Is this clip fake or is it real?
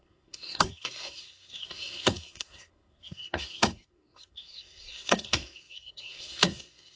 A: fake